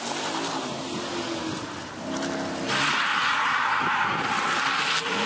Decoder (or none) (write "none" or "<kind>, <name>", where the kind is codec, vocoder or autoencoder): none